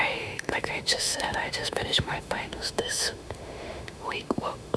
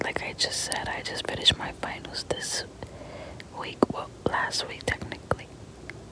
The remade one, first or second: first